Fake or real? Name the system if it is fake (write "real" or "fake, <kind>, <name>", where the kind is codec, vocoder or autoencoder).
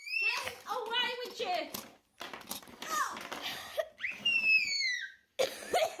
real